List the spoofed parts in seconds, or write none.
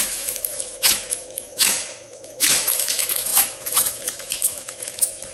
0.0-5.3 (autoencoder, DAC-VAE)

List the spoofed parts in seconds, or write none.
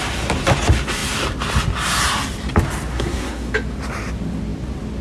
2.9-3.5 (codec, SNAC)